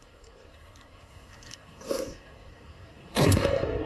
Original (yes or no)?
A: no